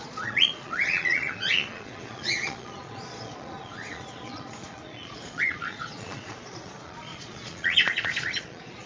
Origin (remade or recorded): remade